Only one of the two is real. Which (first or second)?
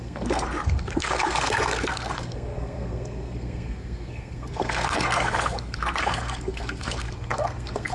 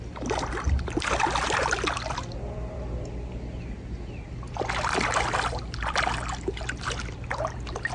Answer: second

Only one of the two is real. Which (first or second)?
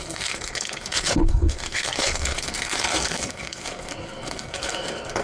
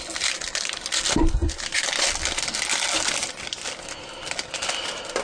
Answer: second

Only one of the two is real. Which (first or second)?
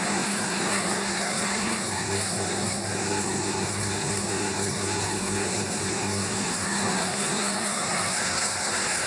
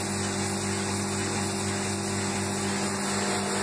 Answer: second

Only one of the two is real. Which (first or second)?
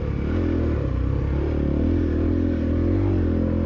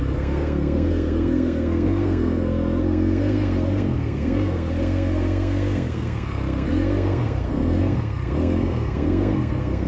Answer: first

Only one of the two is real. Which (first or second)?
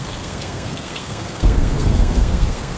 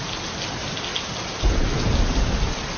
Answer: second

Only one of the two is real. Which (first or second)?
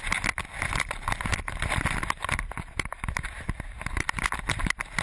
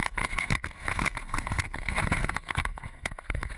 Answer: first